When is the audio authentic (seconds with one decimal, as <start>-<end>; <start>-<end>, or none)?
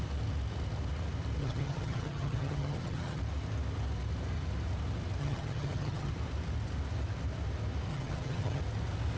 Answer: 0.0-1.4; 3.2-5.2; 6.1-7.9; 8.6-9.2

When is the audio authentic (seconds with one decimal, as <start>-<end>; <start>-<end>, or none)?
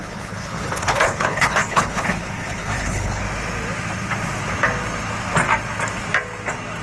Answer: 3.2-6.8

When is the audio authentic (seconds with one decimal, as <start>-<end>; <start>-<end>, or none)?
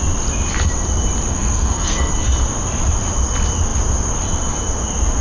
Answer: 0.0-1.3; 2.1-5.2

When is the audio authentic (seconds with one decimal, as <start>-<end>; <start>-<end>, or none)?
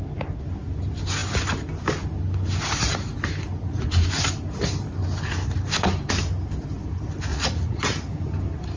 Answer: 0.0-7.3; 7.8-8.8